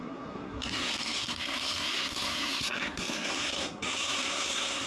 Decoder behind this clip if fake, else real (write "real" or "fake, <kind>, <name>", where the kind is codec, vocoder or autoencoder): fake, codec, SNAC